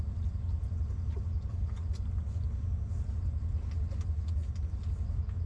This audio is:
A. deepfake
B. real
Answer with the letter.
B